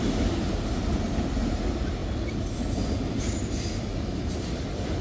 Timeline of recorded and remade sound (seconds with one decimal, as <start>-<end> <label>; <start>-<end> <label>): 0.0-5.0 recorded